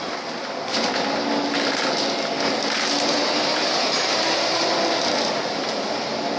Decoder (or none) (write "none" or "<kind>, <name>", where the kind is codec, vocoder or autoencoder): none